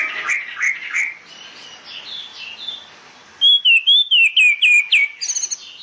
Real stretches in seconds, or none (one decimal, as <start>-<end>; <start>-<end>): 0.0-5.8

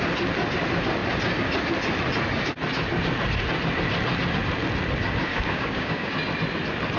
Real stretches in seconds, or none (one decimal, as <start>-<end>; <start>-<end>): 0.0-5.3; 6.1-7.0

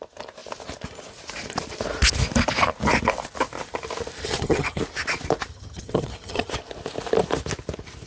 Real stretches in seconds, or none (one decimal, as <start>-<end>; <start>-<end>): 0.0-4.2; 4.8-5.5; 6.5-8.1

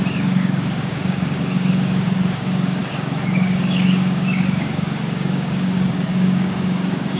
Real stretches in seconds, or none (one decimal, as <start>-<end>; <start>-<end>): none

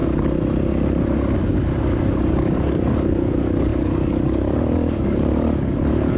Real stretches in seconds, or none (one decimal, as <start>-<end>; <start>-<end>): 0.0-2.1